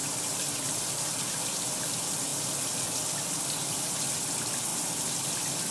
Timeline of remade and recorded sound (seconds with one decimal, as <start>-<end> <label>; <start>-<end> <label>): 0.0-4.7 recorded; 4.7-5.3 remade; 5.3-5.7 recorded